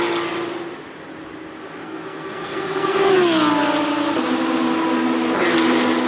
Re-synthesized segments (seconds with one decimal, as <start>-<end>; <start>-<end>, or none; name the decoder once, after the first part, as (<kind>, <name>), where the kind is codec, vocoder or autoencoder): 1.8-3.1 (codec, SNAC)